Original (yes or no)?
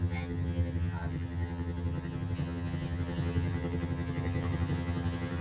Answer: no